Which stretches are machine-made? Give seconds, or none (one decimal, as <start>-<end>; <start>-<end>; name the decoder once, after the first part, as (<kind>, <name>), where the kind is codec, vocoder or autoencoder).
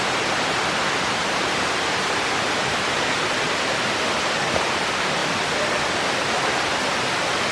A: 1.2-3.0 (vocoder, BigVGAN v2)